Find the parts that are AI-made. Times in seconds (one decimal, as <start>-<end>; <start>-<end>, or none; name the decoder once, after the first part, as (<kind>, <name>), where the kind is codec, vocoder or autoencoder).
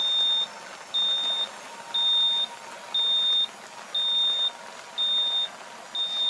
none